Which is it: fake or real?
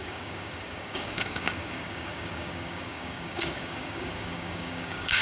fake